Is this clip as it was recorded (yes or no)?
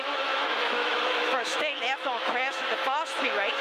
no